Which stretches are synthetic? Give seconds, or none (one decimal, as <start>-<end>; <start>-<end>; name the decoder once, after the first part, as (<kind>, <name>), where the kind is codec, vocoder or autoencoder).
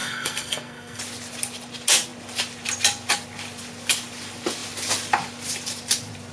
0.0-1.0 (codec, SNAC)